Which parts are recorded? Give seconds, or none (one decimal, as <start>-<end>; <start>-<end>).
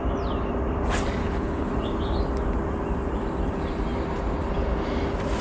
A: 0.0-1.2; 1.7-5.4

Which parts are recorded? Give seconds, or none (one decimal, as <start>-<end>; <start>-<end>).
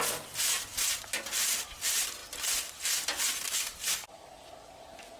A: 0.7-1.6; 2.2-3.4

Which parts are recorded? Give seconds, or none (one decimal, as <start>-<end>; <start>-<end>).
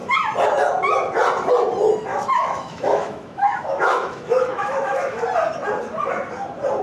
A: 0.0-2.1; 5.2-6.8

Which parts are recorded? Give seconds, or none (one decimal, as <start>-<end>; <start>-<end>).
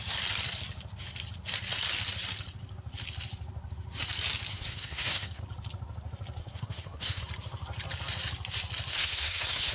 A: 0.0-4.5; 5.4-6.4; 7.2-8.9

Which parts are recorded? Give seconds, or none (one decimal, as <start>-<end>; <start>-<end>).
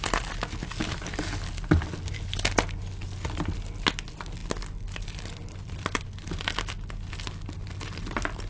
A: 0.0-8.5